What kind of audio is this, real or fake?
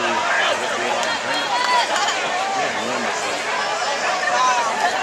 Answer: fake